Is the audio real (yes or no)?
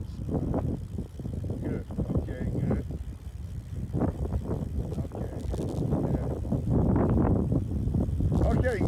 yes